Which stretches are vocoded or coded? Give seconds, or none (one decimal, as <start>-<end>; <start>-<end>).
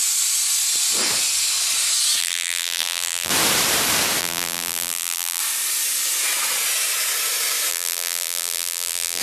2.2-3.3; 4.2-5.4; 7.7-9.2